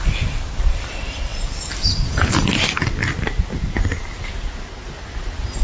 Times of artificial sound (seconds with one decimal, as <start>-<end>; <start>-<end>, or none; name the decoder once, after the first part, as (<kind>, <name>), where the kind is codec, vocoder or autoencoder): none